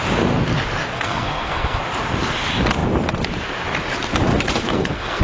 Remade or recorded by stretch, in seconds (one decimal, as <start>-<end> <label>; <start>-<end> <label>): 0.0-0.9 recorded; 0.9-1.8 remade; 1.8-4.3 recorded; 4.3-5.2 remade